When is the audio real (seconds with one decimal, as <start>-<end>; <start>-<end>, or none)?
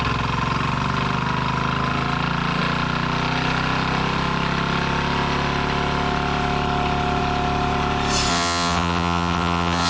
0.0-8.3